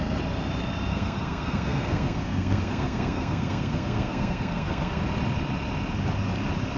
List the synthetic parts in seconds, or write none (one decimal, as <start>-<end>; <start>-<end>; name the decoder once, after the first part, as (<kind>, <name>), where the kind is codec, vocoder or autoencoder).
0.9-5.0 (codec, SNAC)